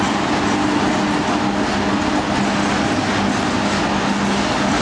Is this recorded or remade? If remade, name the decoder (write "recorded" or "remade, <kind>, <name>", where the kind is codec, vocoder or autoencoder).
recorded